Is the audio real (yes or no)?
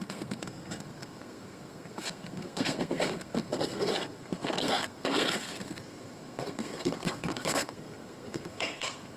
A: no